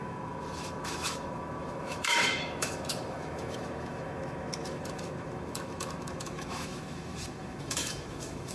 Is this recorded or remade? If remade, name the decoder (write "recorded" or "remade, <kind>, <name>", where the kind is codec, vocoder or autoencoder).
remade, autoencoder, DAC-VAE